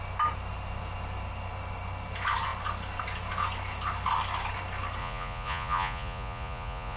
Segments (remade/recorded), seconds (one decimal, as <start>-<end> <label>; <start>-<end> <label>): 0.0-5.0 recorded; 5.0-7.0 remade